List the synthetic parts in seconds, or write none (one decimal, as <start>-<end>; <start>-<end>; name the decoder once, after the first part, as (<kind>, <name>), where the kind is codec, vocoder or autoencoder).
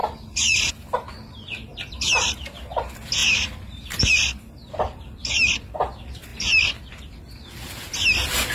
0.0-0.7 (vocoder, BigVGAN v2); 1.7-2.4; 3.2-5.7; 6.3-7.3